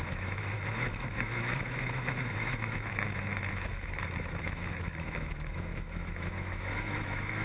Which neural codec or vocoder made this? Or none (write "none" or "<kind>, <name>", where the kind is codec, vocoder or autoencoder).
autoencoder, DAC-VAE